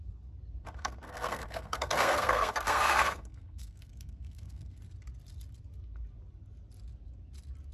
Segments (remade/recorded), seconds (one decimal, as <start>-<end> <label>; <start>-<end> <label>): 0.0-0.6 recorded; 0.6-4.8 remade; 4.8-7.7 recorded